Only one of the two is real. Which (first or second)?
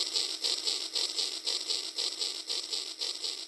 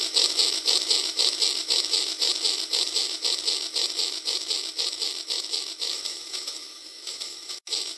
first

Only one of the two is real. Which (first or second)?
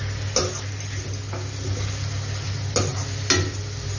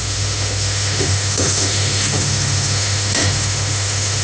first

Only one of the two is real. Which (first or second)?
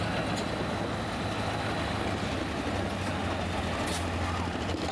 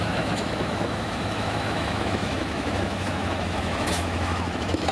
first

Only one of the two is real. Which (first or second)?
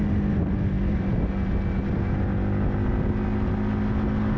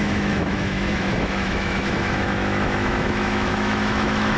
first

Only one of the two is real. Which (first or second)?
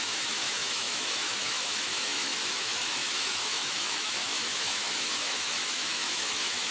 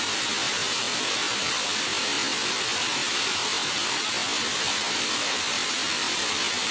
second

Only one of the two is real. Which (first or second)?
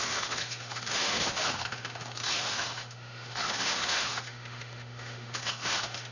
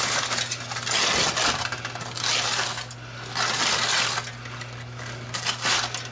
second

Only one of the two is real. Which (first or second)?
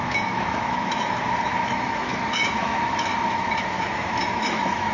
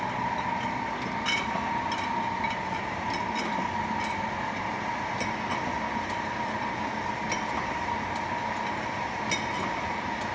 second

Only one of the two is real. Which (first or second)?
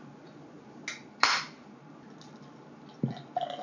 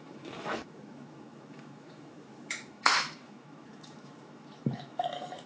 first